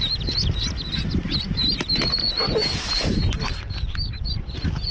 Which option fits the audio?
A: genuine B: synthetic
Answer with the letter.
A